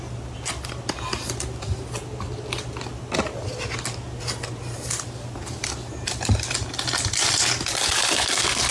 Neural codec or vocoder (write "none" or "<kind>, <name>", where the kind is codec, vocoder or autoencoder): none